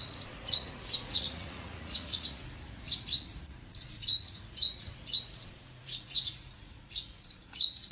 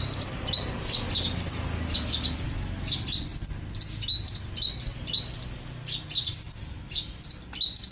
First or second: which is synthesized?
first